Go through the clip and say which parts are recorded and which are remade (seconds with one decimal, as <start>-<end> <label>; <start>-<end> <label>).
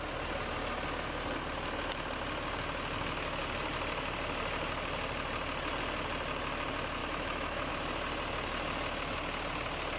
0.0-7.0 recorded; 7.0-7.7 remade; 7.7-10.0 recorded